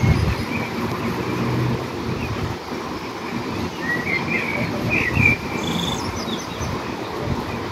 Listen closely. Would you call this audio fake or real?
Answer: real